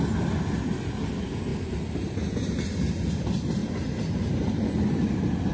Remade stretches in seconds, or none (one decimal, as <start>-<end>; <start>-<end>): none